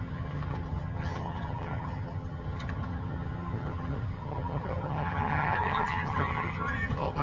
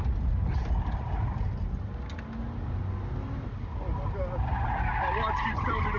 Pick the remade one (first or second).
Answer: first